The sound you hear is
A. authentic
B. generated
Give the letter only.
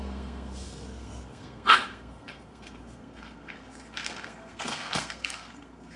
B